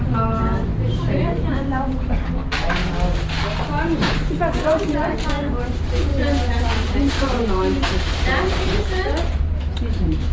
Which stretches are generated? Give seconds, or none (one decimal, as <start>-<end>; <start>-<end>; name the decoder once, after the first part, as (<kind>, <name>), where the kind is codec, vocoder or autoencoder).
0.0-0.7 (vocoder, BigVGAN v2); 1.5-2.8; 3.6-6.1; 7.1-10.3